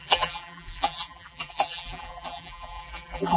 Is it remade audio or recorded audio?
remade